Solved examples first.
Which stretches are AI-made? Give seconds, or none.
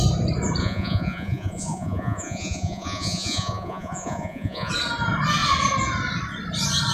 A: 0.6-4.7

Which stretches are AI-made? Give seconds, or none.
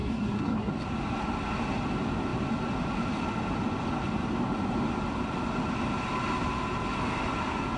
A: 0.0-0.7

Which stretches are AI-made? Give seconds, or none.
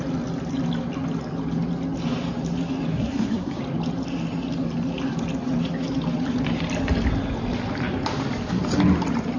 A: 2.9-3.6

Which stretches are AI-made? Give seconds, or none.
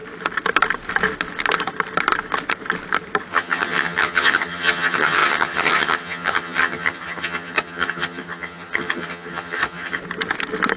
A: 3.3-10.0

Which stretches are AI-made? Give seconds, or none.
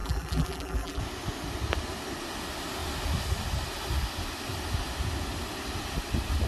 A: 0.0-1.0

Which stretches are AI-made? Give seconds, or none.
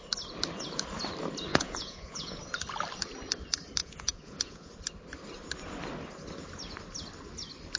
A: 1.5-2.4; 3.8-4.7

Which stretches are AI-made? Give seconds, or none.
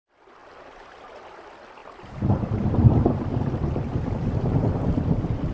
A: 0.4-1.4; 1.8-5.1